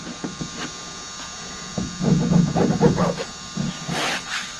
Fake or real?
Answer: real